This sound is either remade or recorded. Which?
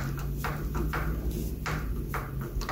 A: recorded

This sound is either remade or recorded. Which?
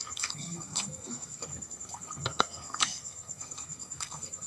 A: remade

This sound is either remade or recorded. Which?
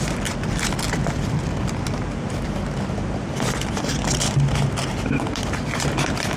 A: remade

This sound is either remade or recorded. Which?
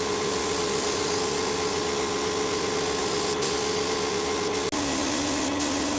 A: recorded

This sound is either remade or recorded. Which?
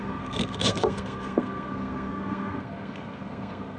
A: remade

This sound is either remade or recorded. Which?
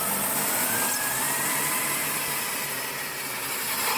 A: recorded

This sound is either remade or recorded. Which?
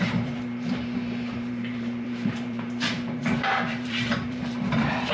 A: remade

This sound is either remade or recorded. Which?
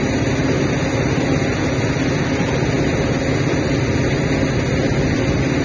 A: recorded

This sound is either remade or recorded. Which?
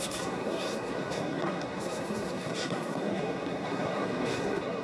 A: remade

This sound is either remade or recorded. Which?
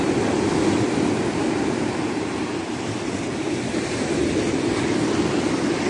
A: remade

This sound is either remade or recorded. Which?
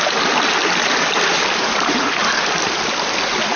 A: recorded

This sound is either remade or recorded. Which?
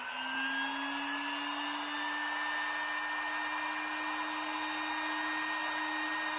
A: recorded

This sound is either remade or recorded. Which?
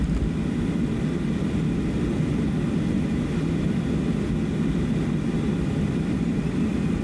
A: recorded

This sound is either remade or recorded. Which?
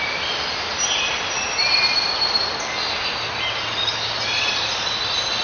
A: recorded